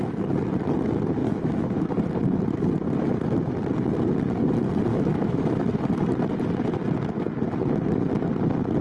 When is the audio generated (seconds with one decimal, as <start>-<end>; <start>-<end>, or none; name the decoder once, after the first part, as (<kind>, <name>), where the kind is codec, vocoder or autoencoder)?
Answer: 1.2-1.9 (autoencoder, DAC-VAE); 4.9-5.6